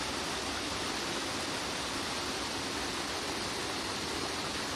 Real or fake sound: real